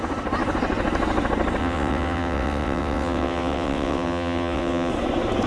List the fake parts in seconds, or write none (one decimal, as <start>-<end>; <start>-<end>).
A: 1.6-4.9